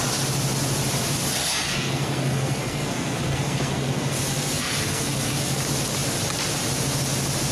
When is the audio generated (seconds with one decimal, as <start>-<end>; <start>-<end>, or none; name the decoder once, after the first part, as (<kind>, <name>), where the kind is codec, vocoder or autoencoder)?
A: 1.4-5.6 (codec, SNAC)

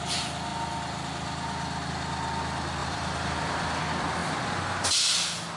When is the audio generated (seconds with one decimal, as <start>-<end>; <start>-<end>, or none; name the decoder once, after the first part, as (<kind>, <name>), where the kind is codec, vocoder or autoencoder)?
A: 2.8-3.8 (vocoder, BigVGAN v2)

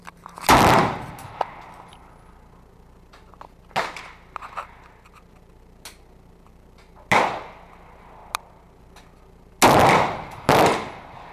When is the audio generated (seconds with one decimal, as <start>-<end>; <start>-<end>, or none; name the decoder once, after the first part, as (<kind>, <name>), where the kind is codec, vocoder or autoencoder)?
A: none

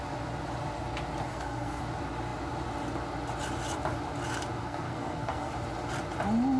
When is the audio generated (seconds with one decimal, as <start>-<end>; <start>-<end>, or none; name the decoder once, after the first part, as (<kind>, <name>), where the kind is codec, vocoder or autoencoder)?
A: 1.3-1.8 (codec, SNAC); 4.6-5.5

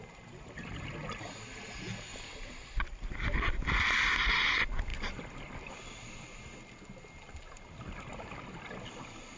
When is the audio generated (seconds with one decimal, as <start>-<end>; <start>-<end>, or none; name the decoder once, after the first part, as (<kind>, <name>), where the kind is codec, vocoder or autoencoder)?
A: none